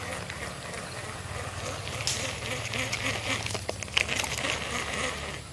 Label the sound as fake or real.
real